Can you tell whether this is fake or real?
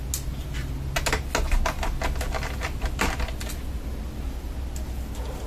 real